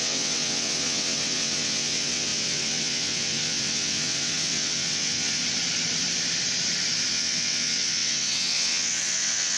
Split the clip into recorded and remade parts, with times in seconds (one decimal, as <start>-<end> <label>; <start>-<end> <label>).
0.0-5.4 remade; 5.4-7.1 recorded; 7.1-9.6 remade